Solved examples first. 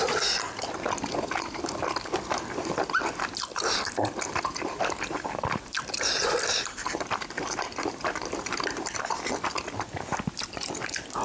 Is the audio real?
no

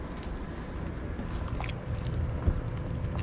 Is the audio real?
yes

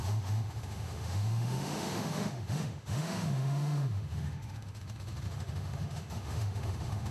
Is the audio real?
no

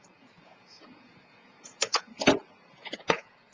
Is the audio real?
no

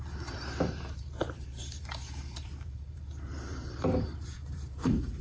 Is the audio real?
no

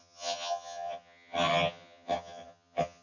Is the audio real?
no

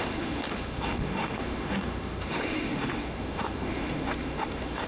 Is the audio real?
no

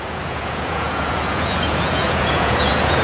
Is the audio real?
no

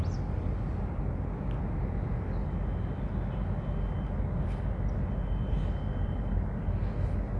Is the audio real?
yes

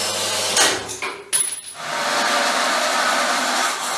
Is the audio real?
yes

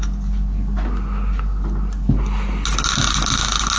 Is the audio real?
yes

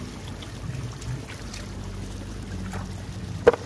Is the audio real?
yes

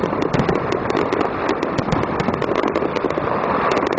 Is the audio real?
yes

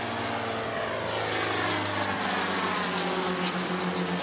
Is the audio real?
yes